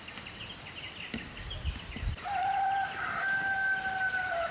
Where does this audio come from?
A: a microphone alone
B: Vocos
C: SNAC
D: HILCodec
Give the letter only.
A